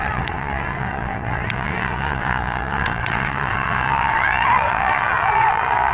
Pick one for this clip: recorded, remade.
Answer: remade